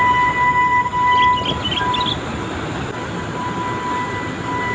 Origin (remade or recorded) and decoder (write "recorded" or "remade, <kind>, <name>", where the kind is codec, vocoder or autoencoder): recorded